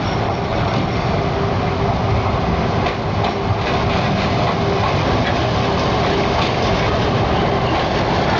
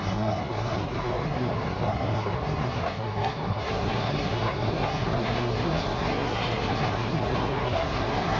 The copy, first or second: second